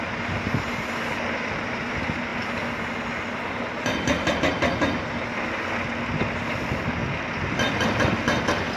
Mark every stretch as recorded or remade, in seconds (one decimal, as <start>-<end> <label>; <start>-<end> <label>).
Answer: 0.0-8.8 recorded